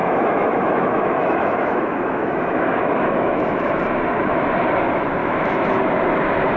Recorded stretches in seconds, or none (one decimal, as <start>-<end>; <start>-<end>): 3.8-5.2; 5.8-6.6

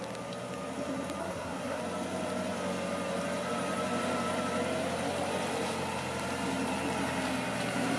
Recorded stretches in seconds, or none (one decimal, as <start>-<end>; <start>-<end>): 0.0-1.2; 1.8-8.0

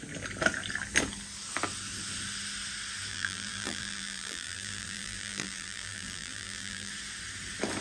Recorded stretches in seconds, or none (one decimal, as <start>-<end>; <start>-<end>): 0.0-3.1; 6.9-7.8

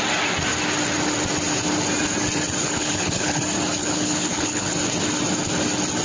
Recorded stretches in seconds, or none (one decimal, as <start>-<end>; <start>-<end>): 0.0-2.6; 3.4-3.8; 4.7-6.0

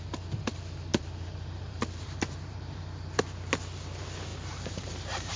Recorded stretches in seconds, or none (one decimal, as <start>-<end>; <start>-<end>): 0.0-0.9; 2.8-4.3

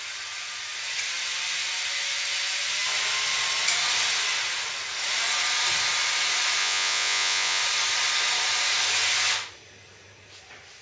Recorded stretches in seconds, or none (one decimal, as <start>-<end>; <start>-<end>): 0.0-6.6; 7.6-10.8

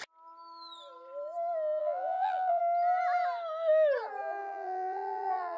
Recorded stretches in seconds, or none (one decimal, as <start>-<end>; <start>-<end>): 0.0-1.8; 2.6-4.4